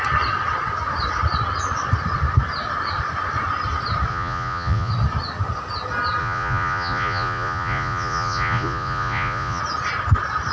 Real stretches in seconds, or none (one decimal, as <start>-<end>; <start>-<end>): 0.0-4.1; 4.9-6.2; 9.6-10.5